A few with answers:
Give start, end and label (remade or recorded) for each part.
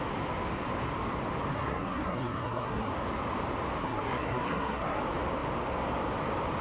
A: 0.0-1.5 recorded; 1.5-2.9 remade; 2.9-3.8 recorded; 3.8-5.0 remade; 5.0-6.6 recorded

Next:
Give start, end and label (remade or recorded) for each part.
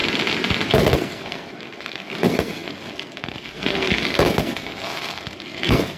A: 0.0-0.7 recorded; 0.7-6.0 remade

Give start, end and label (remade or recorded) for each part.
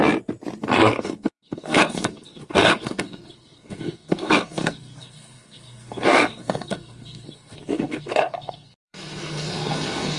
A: 0.0-0.6 recorded; 0.6-10.2 remade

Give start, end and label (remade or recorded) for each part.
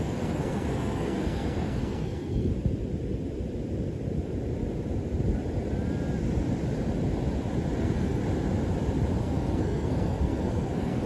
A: 0.0-2.5 remade; 2.5-7.8 recorded; 7.8-8.2 remade; 8.2-9.2 recorded; 9.2-11.1 remade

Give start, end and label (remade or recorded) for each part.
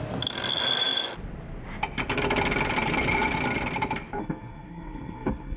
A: 0.0-4.2 recorded; 4.2-5.6 remade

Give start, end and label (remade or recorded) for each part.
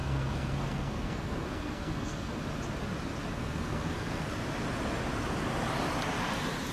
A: 0.0-2.4 remade; 2.4-3.3 recorded; 3.3-4.3 remade; 4.3-6.7 recorded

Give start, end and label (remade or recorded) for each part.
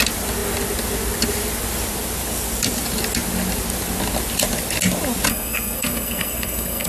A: 0.0-5.3 recorded; 5.3-6.9 remade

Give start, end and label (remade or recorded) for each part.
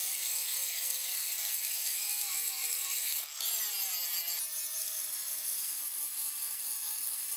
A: 0.0-3.4 remade; 3.4-4.8 recorded; 4.8-7.4 remade